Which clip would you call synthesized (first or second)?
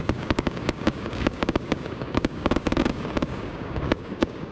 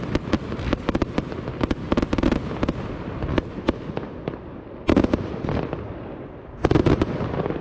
first